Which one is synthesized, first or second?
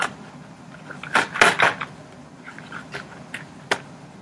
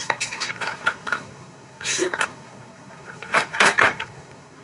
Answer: second